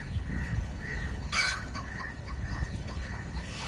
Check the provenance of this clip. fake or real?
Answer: fake